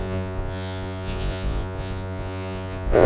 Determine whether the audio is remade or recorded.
remade